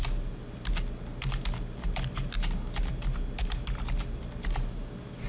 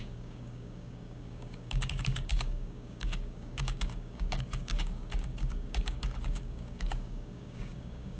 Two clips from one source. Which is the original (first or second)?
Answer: first